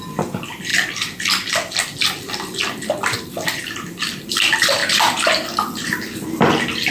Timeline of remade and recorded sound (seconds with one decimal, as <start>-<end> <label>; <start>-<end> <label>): 0.0-2.6 recorded; 2.6-3.9 remade; 3.9-4.8 recorded; 4.8-6.5 remade; 6.5-6.9 recorded